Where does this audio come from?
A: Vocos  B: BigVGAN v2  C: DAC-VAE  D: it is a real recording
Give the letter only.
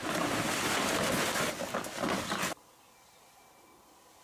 D